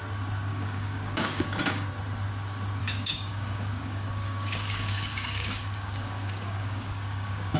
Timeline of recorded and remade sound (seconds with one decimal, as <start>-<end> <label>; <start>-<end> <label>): 0.0-0.5 recorded; 0.5-1.9 remade; 1.9-2.8 recorded; 2.8-7.6 remade